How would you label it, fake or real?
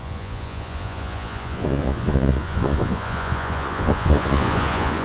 fake